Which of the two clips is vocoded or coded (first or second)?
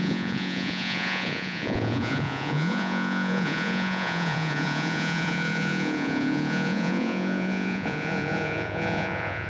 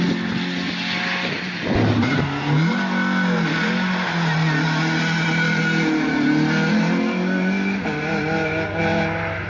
first